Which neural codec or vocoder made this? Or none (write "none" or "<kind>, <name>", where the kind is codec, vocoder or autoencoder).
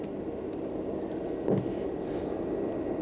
none